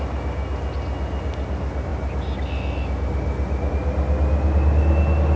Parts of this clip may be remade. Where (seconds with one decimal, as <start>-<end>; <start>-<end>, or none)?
none